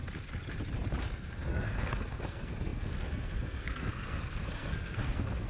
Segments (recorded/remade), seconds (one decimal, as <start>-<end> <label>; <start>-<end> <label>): 0.0-1.0 recorded; 1.0-5.5 remade